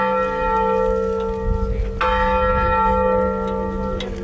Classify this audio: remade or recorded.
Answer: recorded